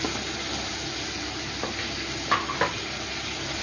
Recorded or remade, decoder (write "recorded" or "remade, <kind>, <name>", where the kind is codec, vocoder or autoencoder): recorded